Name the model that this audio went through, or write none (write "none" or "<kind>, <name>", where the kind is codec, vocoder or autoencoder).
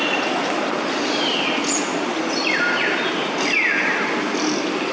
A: none